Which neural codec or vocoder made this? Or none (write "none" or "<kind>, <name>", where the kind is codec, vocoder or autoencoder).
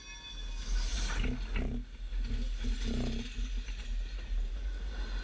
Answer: none